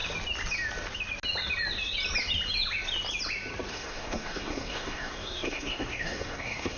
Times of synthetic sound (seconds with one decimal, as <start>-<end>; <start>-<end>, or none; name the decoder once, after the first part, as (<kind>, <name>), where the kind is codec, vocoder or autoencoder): 3.7-6.8 (codec, SNAC)